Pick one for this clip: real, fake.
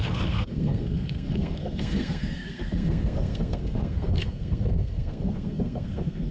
fake